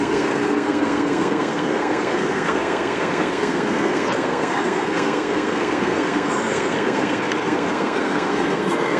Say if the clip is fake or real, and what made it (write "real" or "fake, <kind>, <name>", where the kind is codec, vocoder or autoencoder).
fake, codec, SNAC